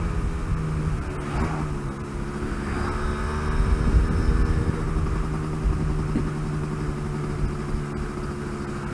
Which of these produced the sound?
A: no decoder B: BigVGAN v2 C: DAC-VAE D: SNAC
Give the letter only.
A